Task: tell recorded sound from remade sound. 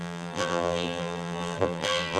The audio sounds remade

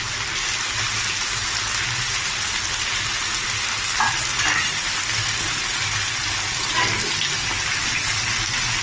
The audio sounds recorded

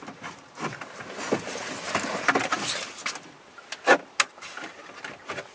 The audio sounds recorded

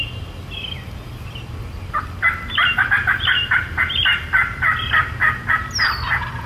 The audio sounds recorded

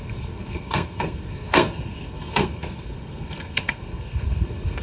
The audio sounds remade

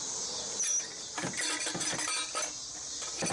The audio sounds recorded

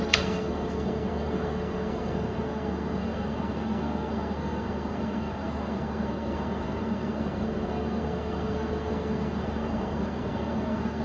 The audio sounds remade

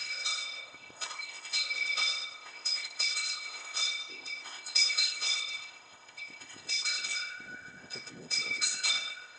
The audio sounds remade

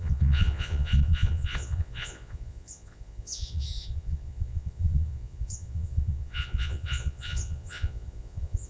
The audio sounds remade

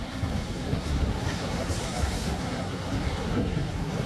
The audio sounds remade